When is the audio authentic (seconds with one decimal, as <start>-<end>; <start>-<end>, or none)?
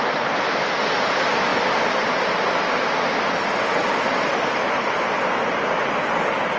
0.0-6.6